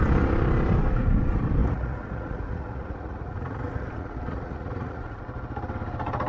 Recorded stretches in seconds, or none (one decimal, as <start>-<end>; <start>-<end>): 0.0-1.6; 5.2-6.3